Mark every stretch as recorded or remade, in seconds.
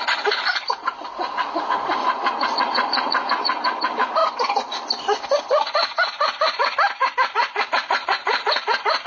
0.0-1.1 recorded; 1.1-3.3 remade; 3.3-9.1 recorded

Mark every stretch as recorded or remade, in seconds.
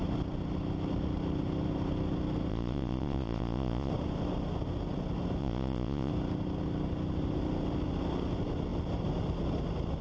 0.0-2.5 recorded; 2.5-3.9 remade; 3.9-5.4 recorded; 5.4-6.1 remade; 6.1-10.0 recorded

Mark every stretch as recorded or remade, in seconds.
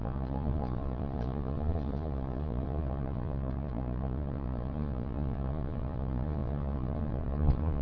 0.0-7.8 remade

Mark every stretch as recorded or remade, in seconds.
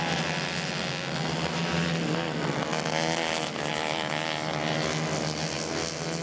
0.0-6.2 recorded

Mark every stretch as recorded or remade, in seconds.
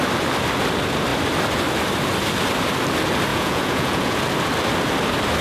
0.0-3.3 recorded; 3.3-4.2 remade; 4.2-5.4 recorded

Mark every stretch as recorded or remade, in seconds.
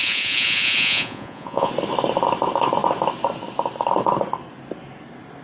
0.0-1.7 remade; 1.7-5.4 recorded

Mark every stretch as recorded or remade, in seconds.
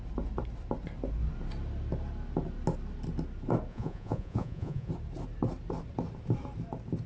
0.0-3.7 recorded; 3.7-4.9 remade; 4.9-7.1 recorded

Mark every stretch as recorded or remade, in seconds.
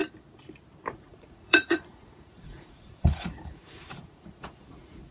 0.0-0.9 recorded; 0.9-5.1 remade